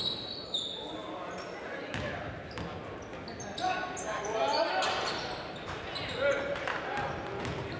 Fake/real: real